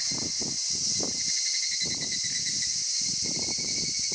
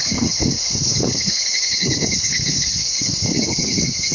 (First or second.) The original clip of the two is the first